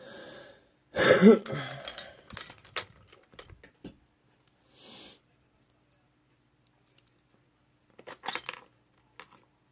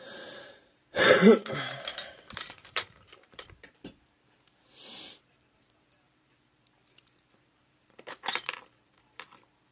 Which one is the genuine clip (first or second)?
first